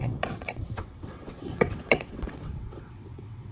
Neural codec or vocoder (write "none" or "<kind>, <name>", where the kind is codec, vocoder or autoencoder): vocoder, WaveNeXt